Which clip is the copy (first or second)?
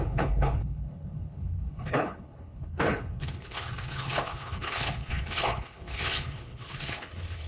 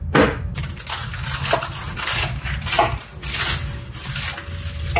first